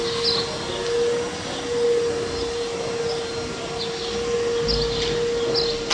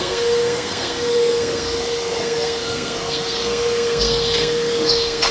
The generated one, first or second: second